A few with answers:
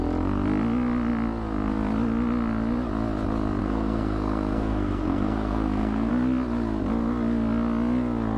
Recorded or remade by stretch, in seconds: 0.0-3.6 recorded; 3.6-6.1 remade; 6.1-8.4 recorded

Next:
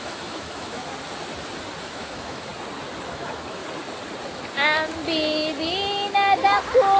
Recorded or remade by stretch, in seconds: 0.0-0.8 remade; 0.8-1.8 recorded; 1.8-2.5 remade; 2.5-3.1 recorded; 3.1-3.6 remade; 3.6-7.0 recorded

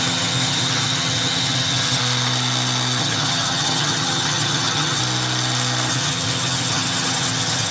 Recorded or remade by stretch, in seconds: 0.0-2.0 remade; 2.0-3.0 recorded; 3.0-5.0 remade; 5.0-5.9 recorded; 5.9-7.7 remade

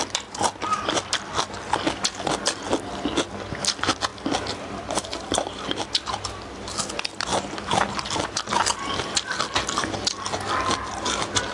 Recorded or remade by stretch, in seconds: 0.0-11.5 recorded

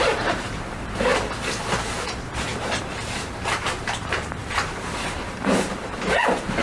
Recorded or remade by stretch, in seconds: 0.0-1.1 remade; 1.1-1.8 recorded; 1.8-6.6 remade

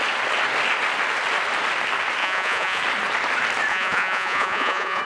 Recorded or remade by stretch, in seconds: 0.0-2.2 recorded; 2.2-2.8 remade; 2.8-3.7 recorded; 3.7-5.0 remade